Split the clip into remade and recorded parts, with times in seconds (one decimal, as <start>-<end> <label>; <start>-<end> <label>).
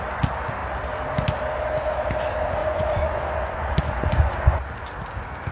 0.0-2.6 recorded; 2.6-4.6 remade; 4.6-5.5 recorded